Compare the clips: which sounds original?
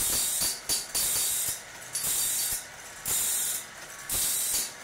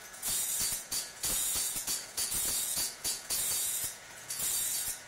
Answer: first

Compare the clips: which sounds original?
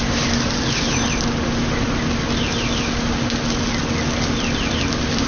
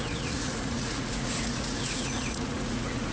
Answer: first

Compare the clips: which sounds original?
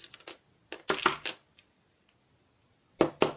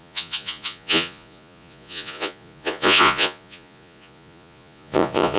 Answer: first